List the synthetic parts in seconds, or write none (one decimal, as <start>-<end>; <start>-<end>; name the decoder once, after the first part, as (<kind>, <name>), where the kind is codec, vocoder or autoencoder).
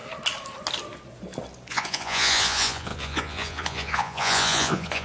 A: 1.7-5.0 (vocoder, Vocos)